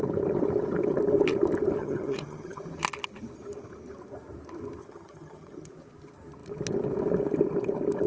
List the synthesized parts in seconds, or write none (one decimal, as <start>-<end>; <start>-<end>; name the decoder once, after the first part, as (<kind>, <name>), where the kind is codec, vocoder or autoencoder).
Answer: 1.8-2.6 (vocoder, HiFi-GAN); 4.8-5.7